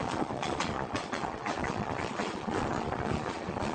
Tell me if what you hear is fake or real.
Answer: fake